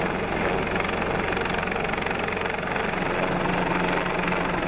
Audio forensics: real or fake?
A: real